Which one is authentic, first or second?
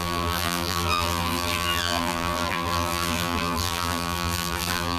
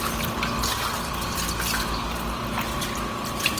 second